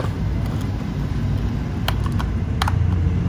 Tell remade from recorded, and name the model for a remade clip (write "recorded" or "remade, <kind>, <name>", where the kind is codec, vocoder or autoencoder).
recorded